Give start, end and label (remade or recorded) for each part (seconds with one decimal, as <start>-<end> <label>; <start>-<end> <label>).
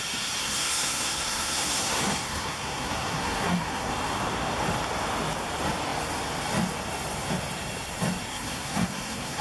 0.0-0.4 recorded; 0.4-3.9 remade; 3.9-8.3 recorded; 8.3-9.4 remade